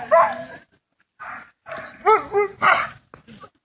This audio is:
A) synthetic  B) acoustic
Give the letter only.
B